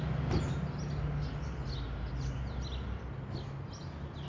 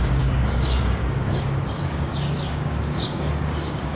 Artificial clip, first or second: second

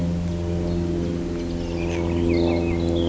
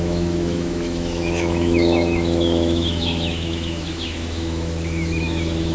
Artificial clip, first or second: second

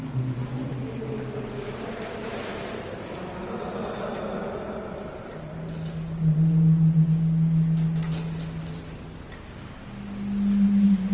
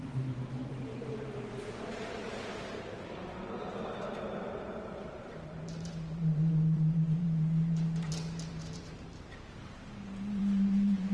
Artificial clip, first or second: second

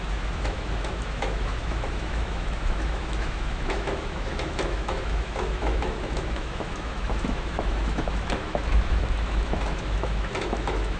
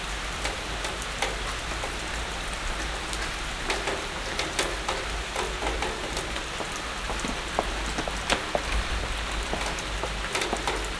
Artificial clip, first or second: first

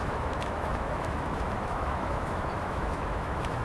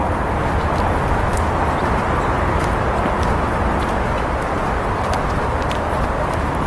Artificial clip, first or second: first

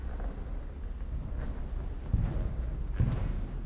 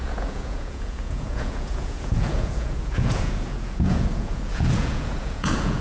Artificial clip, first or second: second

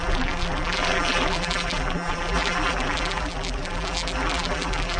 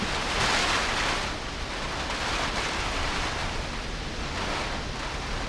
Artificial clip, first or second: first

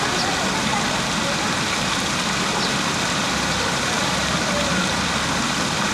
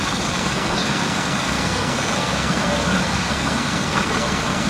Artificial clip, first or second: second